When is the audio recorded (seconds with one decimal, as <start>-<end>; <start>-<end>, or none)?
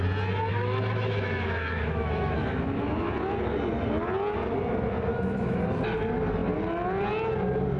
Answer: 0.0-0.5; 3.1-5.1; 5.6-7.8